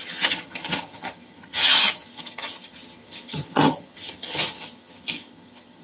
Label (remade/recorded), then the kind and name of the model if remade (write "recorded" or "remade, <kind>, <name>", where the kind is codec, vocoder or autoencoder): remade, vocoder, HiFi-GAN